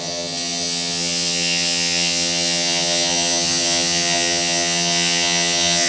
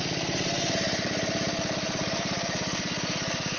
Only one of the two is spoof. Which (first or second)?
first